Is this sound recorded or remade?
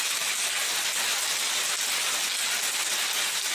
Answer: recorded